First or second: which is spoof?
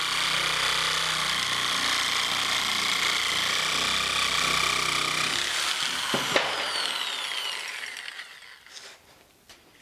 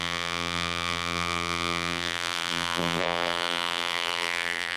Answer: second